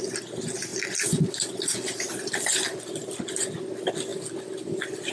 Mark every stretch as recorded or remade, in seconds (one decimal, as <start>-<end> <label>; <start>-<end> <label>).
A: 0.0-5.1 recorded